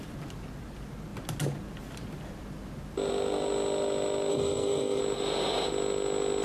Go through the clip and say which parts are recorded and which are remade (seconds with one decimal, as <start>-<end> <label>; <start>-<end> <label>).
0.0-4.3 recorded; 4.3-5.0 remade; 5.0-6.4 recorded